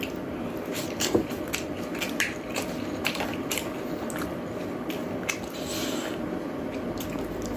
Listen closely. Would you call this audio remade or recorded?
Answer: recorded